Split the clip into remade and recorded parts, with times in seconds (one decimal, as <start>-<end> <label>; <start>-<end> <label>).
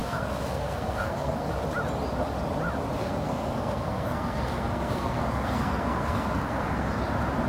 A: 0.0-1.5 remade; 1.5-3.0 recorded; 3.0-7.0 remade; 7.0-7.5 recorded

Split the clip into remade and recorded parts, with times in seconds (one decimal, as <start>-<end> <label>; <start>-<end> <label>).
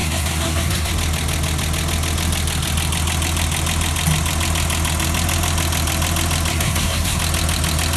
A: 0.0-0.9 remade; 0.9-6.5 recorded; 6.5-7.2 remade; 7.2-8.0 recorded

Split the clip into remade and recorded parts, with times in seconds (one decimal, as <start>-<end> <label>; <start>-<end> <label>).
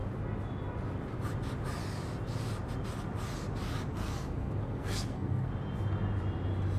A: 0.0-3.9 recorded; 3.9-5.5 remade; 5.5-6.8 recorded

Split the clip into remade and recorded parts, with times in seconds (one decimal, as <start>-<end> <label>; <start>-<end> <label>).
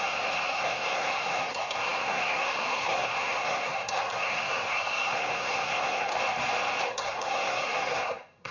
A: 0.0-6.1 remade; 6.1-6.9 recorded; 6.9-8.5 remade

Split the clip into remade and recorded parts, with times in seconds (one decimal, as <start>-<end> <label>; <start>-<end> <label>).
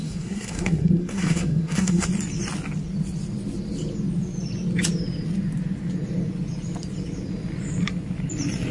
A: 0.0-2.1 remade; 2.1-8.7 recorded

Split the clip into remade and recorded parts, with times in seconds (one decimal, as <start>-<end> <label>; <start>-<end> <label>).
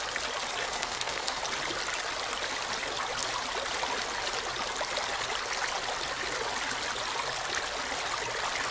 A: 0.0-0.6 recorded; 0.6-1.4 remade; 1.4-8.7 recorded